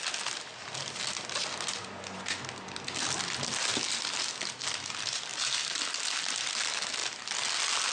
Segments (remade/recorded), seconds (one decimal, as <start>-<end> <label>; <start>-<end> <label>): 0.0-7.9 recorded